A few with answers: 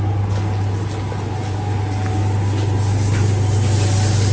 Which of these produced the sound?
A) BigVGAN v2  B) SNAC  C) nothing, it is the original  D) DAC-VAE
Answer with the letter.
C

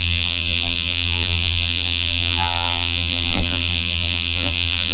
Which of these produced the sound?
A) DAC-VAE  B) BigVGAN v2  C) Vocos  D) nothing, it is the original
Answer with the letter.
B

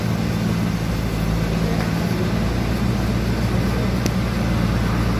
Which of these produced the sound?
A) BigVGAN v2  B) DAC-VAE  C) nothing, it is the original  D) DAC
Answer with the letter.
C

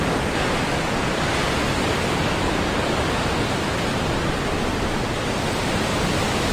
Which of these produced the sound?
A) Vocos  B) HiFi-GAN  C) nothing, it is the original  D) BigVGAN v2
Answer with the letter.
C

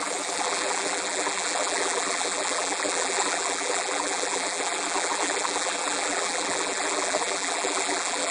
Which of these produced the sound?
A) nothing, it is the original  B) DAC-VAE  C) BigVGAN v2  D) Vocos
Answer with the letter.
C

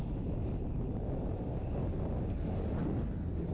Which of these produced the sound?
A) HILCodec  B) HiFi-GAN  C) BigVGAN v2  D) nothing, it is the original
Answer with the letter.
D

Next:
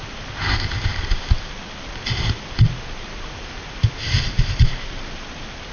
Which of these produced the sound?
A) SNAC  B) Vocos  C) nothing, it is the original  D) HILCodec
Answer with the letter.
C